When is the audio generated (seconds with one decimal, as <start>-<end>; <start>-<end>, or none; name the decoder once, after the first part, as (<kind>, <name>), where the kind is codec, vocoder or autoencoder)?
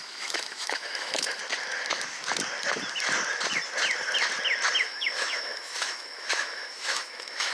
0.0-1.4 (autoencoder, DAC-VAE); 4.8-7.5